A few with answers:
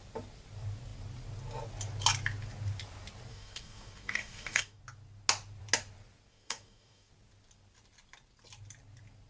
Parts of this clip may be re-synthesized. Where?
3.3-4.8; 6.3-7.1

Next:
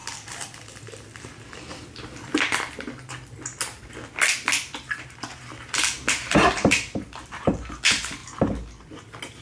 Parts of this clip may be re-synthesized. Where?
5.0-8.2; 8.9-9.4

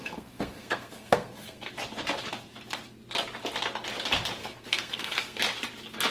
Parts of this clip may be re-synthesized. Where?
0.0-1.7; 4.4-5.4

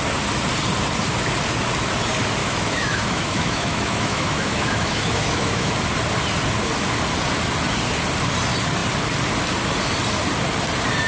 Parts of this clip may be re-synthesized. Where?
2.4-5.7

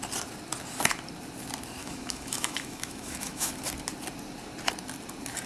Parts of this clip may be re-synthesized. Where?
1.8-3.5